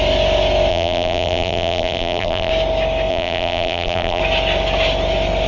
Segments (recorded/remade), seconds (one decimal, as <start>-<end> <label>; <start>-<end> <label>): 0.0-0.7 recorded; 0.7-2.5 remade; 2.5-3.1 recorded; 3.1-4.2 remade; 4.2-5.5 recorded